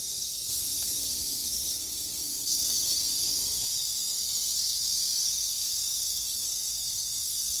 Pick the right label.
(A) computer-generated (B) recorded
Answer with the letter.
A